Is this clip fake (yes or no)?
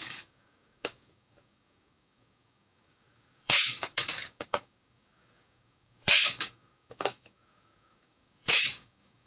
yes